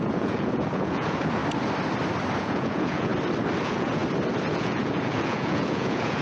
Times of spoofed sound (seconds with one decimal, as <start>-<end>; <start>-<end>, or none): 0.0-1.4; 2.4-3.1; 3.6-4.0; 4.5-6.2